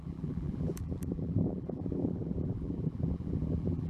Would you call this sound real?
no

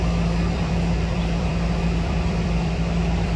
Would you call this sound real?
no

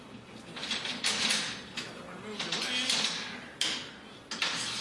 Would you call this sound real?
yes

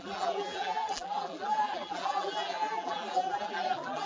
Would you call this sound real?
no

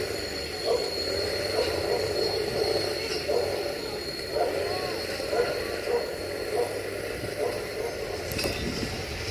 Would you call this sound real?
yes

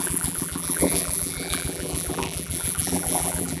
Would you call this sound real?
no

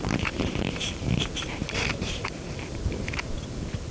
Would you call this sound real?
no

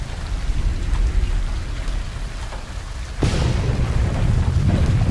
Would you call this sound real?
yes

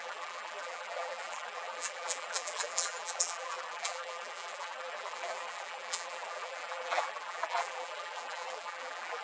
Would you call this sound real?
no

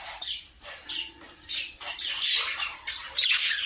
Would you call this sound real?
no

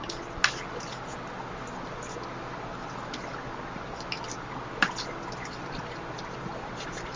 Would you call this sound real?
yes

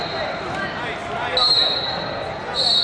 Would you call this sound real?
yes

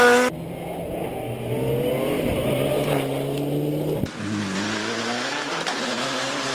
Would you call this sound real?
yes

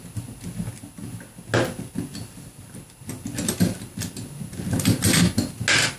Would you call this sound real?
yes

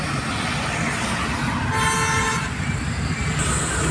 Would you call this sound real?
yes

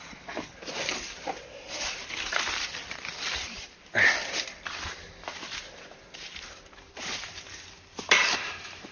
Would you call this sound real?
no